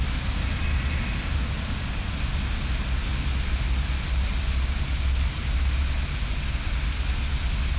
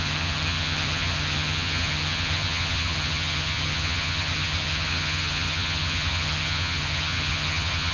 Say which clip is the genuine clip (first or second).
first